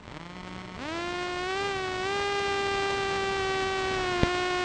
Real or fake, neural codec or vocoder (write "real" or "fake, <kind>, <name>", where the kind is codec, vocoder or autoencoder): real